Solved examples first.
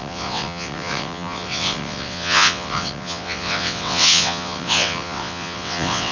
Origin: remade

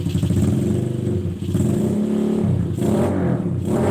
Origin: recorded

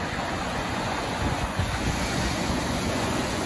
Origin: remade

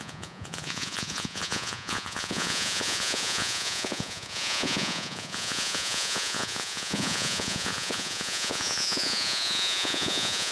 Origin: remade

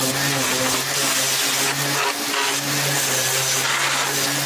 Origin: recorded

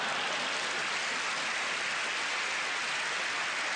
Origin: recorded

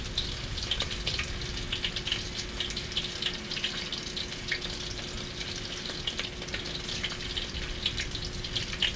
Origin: recorded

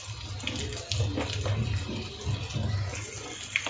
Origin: recorded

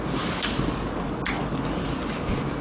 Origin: recorded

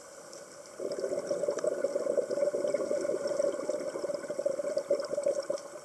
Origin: recorded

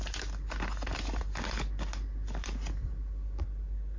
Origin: recorded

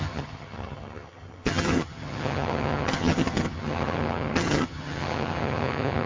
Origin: remade